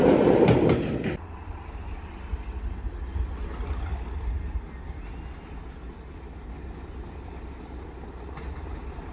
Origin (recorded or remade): recorded